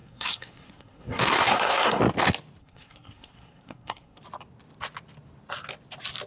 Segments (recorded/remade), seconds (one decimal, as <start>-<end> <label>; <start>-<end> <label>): 0.0-2.0 remade; 2.0-2.6 recorded; 2.6-4.2 remade; 4.2-6.3 recorded